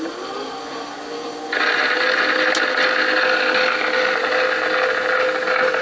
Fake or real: real